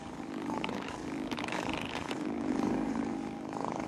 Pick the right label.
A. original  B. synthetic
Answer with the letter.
B